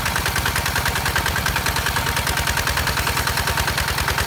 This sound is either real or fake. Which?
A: real